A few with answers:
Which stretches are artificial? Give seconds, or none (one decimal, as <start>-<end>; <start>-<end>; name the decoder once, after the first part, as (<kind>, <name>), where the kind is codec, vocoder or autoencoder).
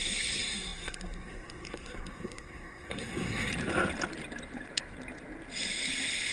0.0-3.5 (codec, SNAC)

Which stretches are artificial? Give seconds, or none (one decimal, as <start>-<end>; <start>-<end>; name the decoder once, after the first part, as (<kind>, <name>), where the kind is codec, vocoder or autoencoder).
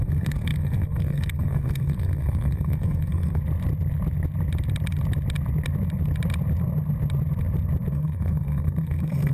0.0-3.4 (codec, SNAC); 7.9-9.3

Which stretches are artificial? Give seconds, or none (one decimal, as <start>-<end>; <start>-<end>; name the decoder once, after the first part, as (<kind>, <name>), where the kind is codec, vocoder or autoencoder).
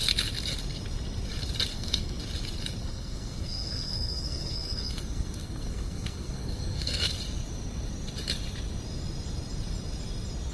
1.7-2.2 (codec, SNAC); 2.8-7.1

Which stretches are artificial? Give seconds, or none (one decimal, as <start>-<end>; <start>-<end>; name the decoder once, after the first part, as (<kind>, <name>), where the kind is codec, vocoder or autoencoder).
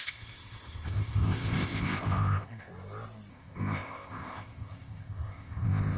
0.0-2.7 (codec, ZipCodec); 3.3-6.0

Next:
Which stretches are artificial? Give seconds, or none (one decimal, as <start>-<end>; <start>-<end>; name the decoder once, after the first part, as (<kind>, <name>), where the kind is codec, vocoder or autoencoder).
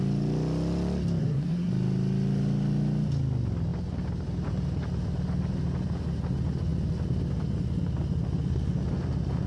1.2-1.7 (codec, SNAC)